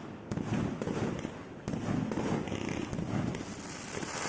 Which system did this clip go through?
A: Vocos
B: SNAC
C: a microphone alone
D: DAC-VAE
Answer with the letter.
C